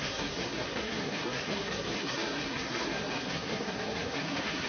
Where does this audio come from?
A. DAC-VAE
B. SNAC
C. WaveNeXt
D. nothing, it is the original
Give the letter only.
B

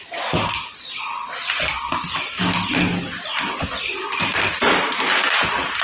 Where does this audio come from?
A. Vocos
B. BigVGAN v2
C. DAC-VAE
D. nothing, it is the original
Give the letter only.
B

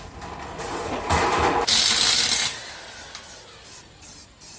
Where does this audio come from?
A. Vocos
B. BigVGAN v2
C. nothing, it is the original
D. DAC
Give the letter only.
C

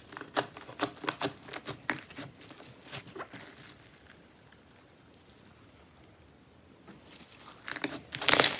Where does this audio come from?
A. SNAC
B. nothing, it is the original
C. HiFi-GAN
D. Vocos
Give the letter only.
B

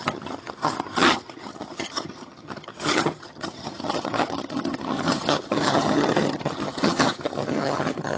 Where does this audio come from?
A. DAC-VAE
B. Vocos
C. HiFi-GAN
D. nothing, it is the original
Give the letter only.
C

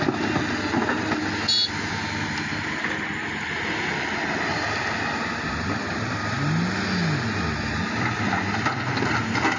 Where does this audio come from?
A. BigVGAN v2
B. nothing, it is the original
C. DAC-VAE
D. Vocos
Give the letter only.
B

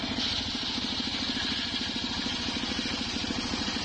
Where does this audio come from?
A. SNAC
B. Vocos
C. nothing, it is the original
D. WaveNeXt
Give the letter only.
C